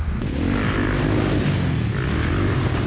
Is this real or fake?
real